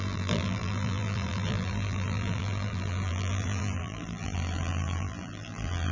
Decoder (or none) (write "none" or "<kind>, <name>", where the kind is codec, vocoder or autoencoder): vocoder, BigVGAN v2